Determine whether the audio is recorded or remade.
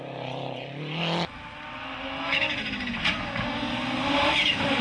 recorded